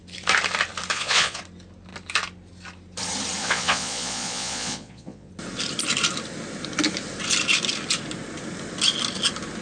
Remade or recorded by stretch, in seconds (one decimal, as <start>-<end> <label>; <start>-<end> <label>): 0.0-0.9 recorded; 0.9-1.4 remade; 1.4-3.4 recorded; 3.4-5.3 remade; 5.3-9.6 recorded